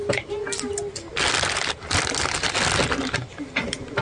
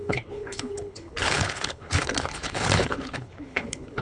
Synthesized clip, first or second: second